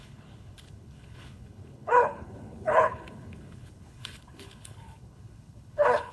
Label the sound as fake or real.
fake